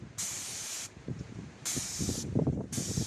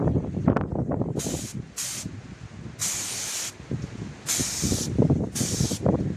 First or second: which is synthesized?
first